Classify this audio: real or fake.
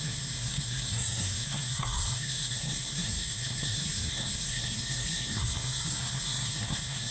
fake